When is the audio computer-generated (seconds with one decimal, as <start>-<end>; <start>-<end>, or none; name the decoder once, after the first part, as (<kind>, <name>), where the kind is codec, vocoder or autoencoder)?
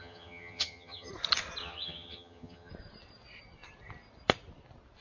0.0-1.1 (vocoder, HiFi-GAN); 1.6-2.7